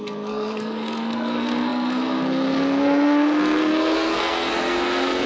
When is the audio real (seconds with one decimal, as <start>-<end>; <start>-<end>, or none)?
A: none

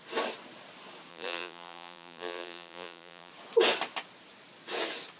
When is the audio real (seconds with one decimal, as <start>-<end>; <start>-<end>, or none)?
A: 0.0-1.1; 3.3-5.2

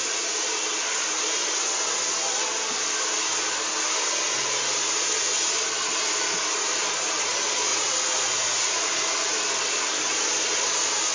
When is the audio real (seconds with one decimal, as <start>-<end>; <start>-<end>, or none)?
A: 0.0-7.7; 9.3-11.1

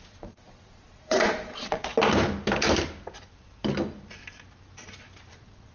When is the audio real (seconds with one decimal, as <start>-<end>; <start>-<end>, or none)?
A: 1.9-5.3

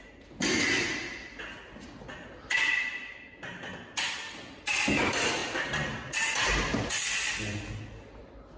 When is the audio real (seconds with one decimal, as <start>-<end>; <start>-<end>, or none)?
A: 0.0-8.6

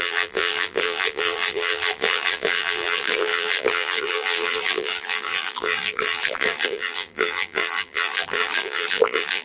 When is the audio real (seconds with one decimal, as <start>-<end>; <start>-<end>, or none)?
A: none